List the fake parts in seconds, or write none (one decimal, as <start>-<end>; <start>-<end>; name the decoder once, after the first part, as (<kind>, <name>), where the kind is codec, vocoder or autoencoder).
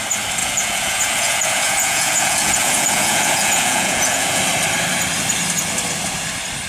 0.4-4.4 (vocoder, Vocos)